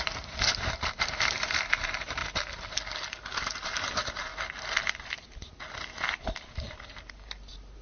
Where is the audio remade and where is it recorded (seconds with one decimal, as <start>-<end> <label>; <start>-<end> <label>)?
0.0-2.2 remade; 2.2-3.3 recorded; 3.3-4.3 remade; 4.3-7.1 recorded; 7.1-7.8 remade